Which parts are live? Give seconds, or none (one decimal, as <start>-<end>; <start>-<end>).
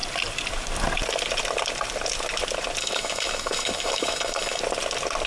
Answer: 0.0-2.8; 4.6-5.3